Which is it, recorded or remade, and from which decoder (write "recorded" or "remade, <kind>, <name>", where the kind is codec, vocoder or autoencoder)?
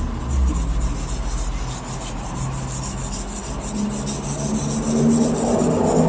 recorded